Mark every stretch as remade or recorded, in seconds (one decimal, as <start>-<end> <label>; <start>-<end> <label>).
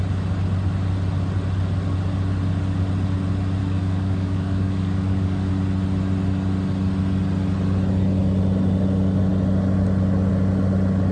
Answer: 0.0-3.6 recorded; 3.6-5.5 remade; 5.5-11.1 recorded